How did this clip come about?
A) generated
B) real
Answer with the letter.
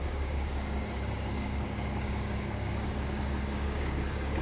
A